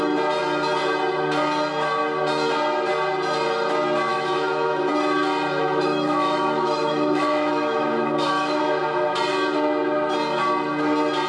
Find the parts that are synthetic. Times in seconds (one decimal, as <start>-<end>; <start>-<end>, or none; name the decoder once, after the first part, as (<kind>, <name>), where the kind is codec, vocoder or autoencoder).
4.1-4.9 (autoencoder, DAC-VAE); 5.6-8.6